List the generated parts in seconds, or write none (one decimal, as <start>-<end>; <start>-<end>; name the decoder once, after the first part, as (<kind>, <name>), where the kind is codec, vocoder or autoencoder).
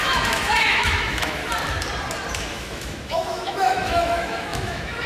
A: 0.0-1.4 (autoencoder, DAC-VAE); 2.3-5.1